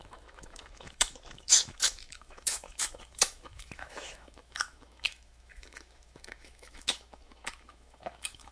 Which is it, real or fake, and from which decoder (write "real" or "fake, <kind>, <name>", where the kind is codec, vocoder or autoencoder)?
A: fake, autoencoder, DAC-VAE